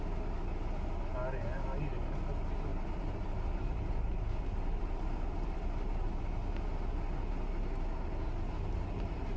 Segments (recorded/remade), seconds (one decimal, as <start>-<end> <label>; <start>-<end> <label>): 0.0-2.7 recorded; 2.7-6.2 remade; 6.2-9.4 recorded